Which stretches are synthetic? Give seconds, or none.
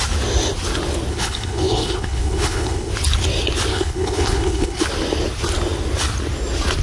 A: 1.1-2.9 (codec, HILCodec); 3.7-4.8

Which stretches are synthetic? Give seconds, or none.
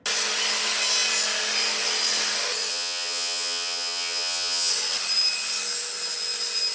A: 2.7-4.7 (vocoder, HiFi-GAN)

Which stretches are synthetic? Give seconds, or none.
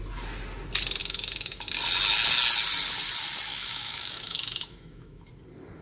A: 1.0-1.7 (autoencoder, DAC-VAE); 3.5-5.3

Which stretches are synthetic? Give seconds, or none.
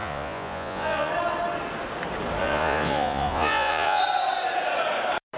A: 0.0-1.1 (vocoder, Vocos); 2.4-4.0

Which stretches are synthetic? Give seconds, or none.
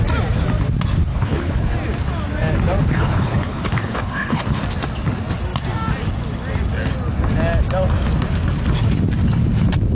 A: 1.0-1.7 (codec, HILCodec); 2.8-4.6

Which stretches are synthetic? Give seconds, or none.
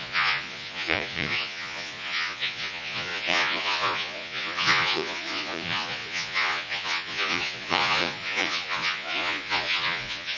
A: 0.0-10.4 (vocoder, Vocos)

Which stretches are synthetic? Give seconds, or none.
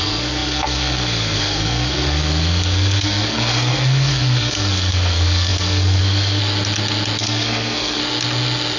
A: 0.0-6.4 (codec, SNAC); 7.2-8.0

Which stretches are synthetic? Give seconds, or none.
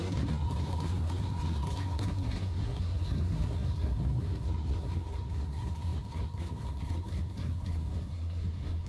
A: 0.0-8.9 (codec, SNAC)